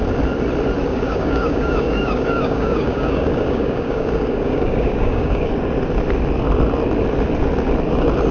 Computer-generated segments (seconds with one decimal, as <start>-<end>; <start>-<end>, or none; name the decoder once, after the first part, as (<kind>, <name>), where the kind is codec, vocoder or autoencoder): 0.9-5.5 (codec, DAC)